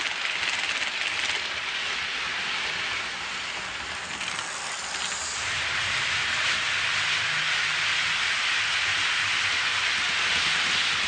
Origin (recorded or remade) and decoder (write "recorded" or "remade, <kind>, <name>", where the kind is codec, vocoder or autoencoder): recorded